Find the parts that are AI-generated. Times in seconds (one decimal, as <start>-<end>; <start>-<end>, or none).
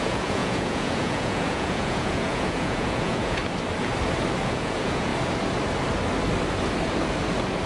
0.0-3.4; 4.4-5.1